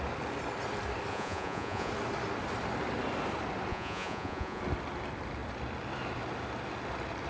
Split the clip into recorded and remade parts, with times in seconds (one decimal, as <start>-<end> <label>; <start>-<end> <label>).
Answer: 0.0-1.1 recorded; 1.1-1.9 remade; 1.9-3.7 recorded; 3.7-4.6 remade; 4.6-7.3 recorded